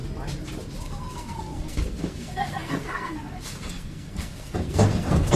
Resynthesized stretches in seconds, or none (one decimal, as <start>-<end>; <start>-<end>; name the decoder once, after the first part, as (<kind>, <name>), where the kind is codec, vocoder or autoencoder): 0.8-5.4 (codec, SNAC)